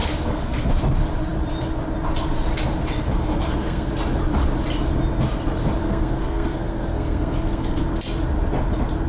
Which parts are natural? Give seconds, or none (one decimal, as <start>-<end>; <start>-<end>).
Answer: 0.7-3.0; 3.9-5.8; 7.9-9.1